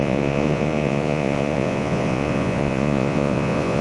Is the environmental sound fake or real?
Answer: fake